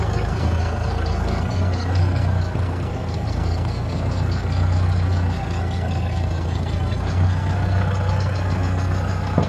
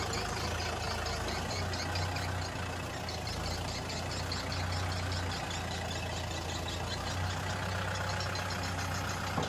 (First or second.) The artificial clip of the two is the first